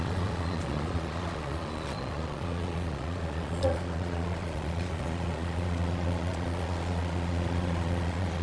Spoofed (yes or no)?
yes